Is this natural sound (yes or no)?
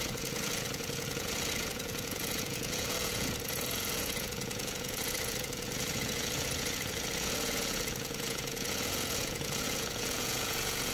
no